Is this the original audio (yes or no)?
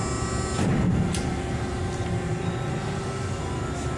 yes